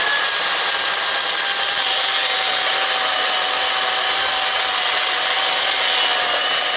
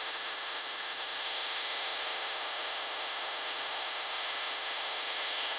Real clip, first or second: first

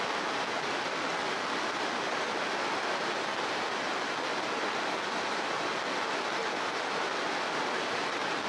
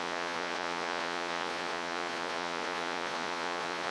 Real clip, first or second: first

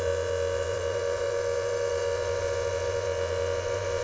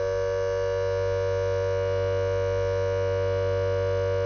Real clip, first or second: second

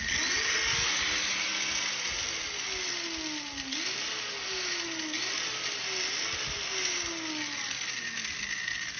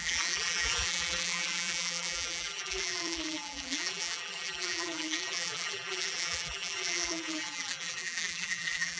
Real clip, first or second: first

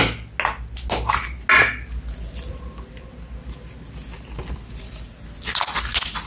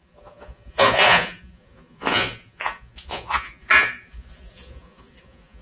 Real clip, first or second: first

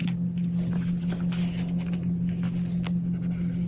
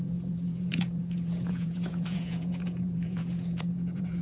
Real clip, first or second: first